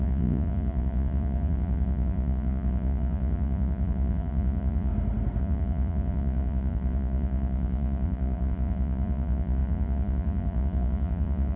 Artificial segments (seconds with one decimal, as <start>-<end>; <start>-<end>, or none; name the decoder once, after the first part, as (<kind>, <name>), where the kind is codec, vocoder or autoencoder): 0.0-4.9 (vocoder, Vocos); 5.4-11.6